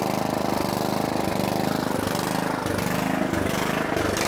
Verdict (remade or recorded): recorded